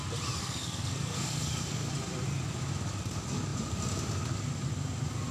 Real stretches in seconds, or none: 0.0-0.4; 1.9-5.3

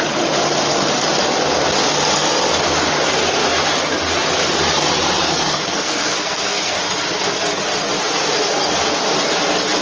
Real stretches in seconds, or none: 0.0-5.2; 6.8-9.8

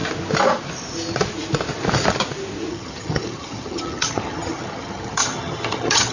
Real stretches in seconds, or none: 0.0-2.7